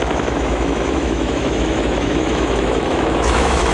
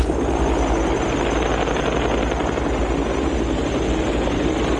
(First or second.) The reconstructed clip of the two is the first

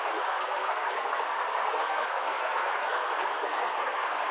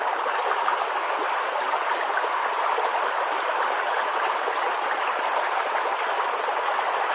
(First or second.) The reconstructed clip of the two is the first